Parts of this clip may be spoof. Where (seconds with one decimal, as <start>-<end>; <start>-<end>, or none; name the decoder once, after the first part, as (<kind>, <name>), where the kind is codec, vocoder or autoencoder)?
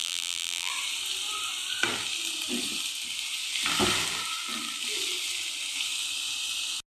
0.0-0.7 (vocoder, BigVGAN v2)